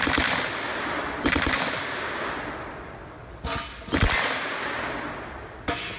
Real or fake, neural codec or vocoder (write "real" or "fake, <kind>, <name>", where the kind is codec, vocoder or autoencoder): real